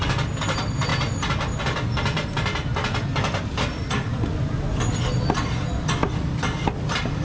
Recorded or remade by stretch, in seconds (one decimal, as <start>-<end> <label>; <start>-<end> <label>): 0.0-7.2 recorded